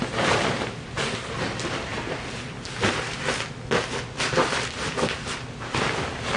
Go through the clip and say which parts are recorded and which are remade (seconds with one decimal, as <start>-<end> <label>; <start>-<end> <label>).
0.0-6.4 recorded